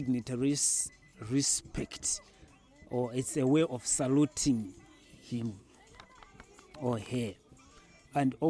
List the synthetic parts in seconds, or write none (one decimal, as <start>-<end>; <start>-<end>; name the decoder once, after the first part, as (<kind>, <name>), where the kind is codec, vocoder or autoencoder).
5.3-5.8 (codec, SNAC)